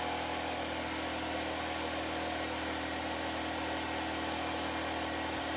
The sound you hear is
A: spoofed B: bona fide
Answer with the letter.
B